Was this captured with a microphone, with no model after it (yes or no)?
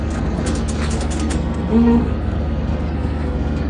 no